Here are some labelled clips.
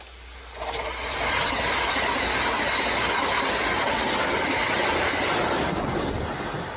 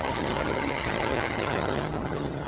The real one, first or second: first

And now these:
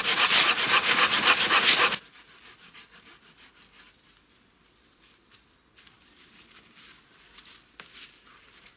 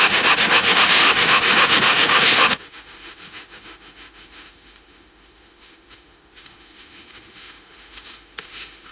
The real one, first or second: first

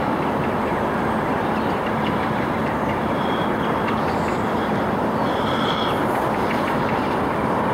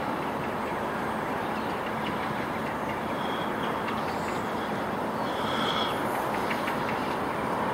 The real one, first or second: second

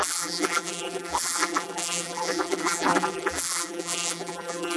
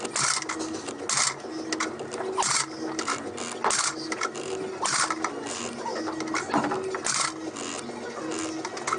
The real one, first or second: second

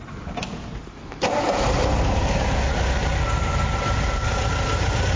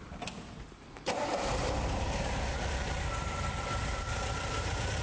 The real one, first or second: first